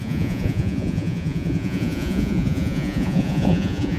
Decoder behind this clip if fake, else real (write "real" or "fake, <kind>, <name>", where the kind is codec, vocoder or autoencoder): fake, vocoder, Vocos